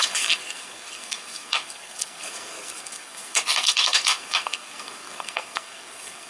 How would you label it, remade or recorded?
remade